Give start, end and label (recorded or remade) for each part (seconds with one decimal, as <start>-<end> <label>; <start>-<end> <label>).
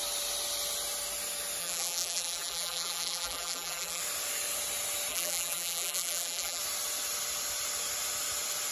0.0-1.6 recorded; 1.6-4.0 remade; 4.0-5.1 recorded; 5.1-6.6 remade; 6.6-8.7 recorded